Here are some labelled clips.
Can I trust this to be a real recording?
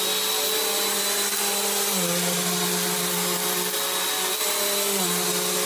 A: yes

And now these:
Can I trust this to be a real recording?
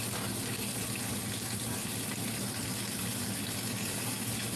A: yes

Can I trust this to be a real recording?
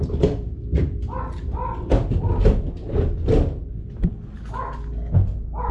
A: yes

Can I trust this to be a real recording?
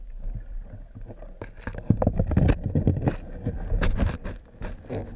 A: yes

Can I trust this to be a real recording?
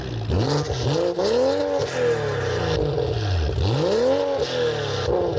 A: yes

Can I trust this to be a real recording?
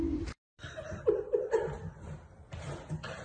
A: no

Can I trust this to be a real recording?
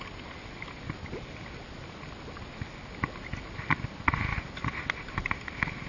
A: yes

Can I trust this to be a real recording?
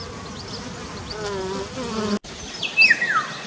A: yes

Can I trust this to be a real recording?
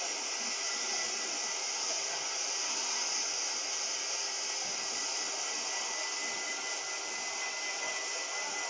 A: yes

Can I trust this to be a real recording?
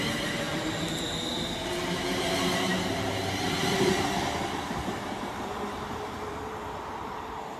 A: no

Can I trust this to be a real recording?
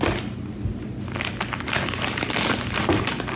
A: no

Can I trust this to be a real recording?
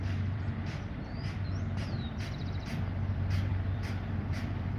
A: no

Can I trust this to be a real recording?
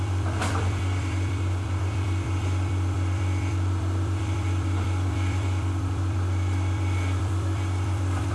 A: no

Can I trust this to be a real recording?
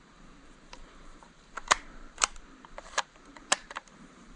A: no